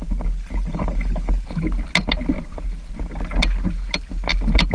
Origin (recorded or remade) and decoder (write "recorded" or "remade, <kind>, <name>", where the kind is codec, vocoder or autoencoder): recorded